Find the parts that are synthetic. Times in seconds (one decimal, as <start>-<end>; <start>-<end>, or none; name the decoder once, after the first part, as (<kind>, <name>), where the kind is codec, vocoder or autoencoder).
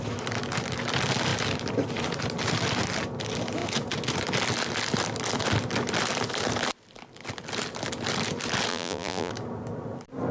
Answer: 8.7-9.3 (vocoder, BigVGAN v2)